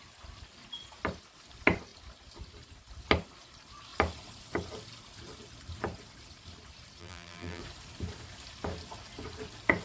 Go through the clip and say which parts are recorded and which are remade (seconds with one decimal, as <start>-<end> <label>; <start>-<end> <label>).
0.0-7.0 recorded; 7.0-7.6 remade; 7.6-9.8 recorded